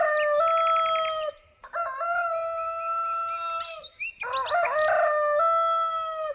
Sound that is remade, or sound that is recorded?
recorded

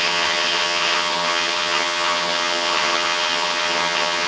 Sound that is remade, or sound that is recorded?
remade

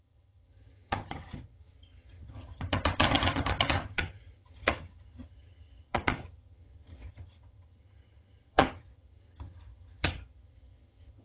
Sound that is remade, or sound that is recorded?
remade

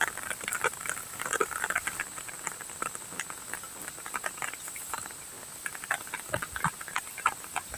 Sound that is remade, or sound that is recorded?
recorded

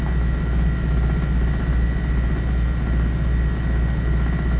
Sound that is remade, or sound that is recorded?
recorded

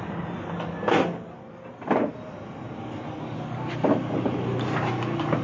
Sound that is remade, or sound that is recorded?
recorded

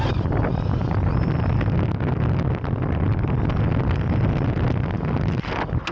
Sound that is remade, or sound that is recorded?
recorded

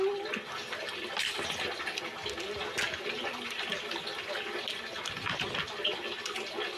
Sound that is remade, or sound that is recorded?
recorded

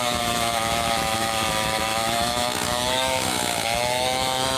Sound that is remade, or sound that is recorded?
remade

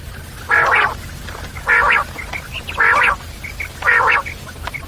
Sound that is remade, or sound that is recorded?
recorded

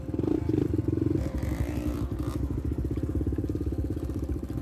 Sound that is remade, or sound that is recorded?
recorded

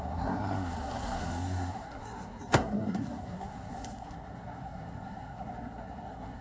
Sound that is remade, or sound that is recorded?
remade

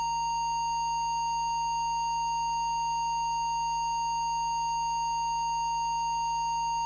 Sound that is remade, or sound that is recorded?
recorded